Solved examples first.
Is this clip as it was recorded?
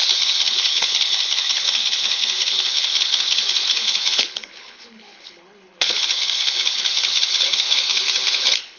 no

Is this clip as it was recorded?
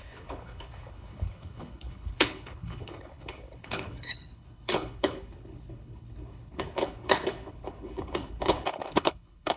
no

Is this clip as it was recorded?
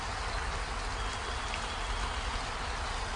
yes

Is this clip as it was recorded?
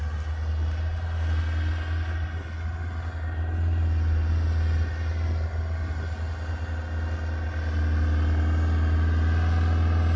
yes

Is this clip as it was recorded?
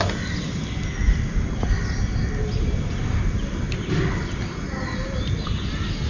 yes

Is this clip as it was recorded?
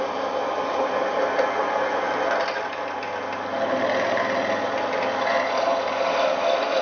yes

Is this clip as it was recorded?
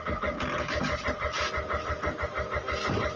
yes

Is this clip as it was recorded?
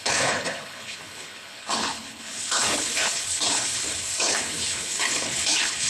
no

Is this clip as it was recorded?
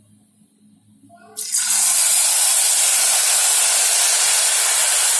yes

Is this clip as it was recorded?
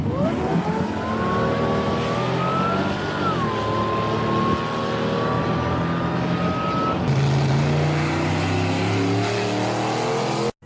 yes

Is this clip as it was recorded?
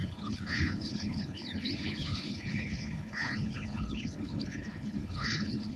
no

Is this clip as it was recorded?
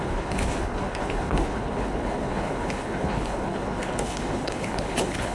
no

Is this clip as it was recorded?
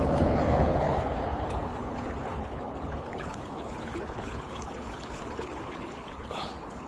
no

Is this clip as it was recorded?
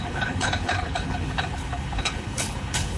no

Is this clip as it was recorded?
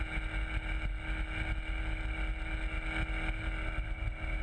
yes